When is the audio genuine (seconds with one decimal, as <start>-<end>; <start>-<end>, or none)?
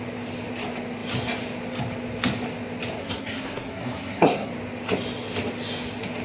0.0-3.0; 4.5-6.2